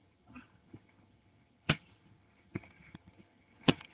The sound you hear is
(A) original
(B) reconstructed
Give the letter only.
B